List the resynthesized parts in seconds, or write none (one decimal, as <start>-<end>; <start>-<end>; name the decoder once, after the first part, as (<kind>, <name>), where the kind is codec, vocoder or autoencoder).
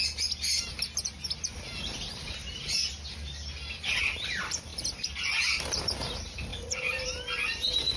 none